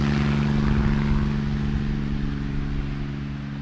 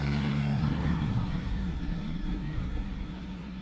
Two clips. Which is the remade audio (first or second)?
second